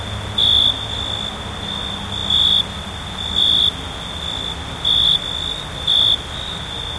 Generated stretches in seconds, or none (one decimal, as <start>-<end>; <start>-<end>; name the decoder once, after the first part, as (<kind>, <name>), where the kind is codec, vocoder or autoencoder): none